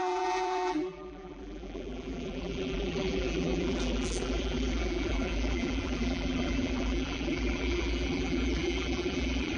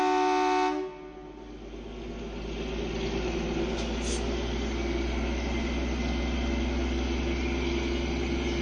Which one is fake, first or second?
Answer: first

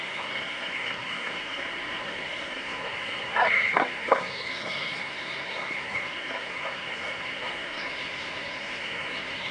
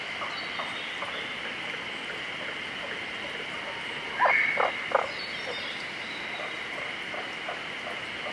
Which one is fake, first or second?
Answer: first